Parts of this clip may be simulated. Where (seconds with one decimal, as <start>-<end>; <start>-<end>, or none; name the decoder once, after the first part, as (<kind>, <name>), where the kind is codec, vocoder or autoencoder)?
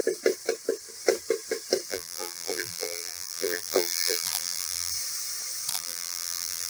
1.9-4.9 (vocoder, BigVGAN v2); 5.7-6.7